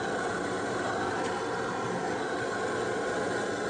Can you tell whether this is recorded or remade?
recorded